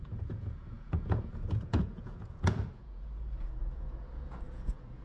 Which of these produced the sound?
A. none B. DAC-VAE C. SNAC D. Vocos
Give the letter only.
D